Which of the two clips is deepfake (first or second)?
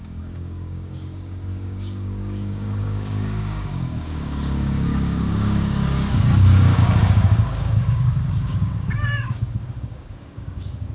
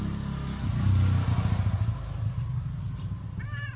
first